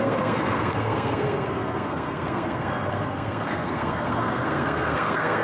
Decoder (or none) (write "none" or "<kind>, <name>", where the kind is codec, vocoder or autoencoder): codec, SNAC